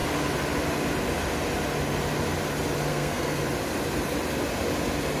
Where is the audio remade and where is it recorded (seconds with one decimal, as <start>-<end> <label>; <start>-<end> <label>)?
0.0-2.9 recorded; 2.9-3.4 remade; 3.4-5.2 recorded

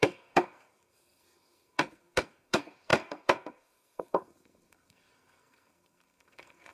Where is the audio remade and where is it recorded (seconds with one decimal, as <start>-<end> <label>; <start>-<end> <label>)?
0.0-6.7 remade

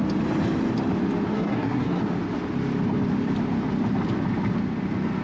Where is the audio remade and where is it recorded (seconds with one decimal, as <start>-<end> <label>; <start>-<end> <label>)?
0.0-1.3 recorded; 1.3-2.0 remade; 2.0-5.2 recorded

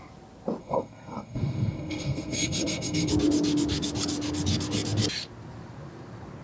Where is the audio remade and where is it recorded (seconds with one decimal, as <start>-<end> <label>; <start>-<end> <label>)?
0.0-0.6 recorded; 0.6-3.1 remade; 3.1-6.4 recorded

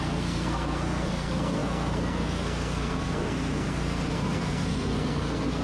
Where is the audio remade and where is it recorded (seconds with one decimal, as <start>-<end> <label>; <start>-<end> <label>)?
0.0-5.6 remade

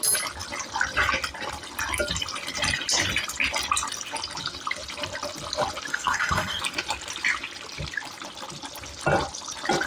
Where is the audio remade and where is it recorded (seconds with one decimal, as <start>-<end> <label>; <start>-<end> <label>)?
0.0-5.9 recorded; 5.9-6.6 remade; 6.6-9.9 recorded

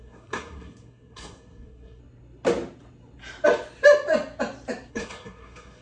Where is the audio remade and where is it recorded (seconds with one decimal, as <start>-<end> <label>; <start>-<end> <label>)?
0.0-2.0 remade; 2.0-4.9 recorded; 4.9-5.8 remade

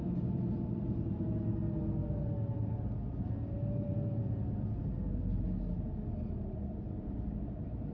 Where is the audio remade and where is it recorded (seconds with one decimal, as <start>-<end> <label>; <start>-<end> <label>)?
0.0-7.9 recorded